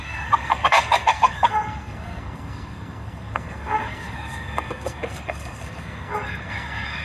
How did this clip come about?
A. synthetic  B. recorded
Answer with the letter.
A